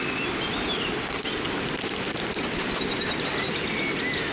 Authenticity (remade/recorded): recorded